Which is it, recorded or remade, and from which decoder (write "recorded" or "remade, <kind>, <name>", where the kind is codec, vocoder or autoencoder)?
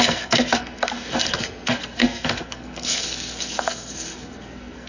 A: remade, codec, SNAC